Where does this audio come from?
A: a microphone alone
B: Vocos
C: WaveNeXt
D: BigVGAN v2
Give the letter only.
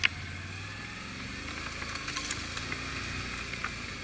A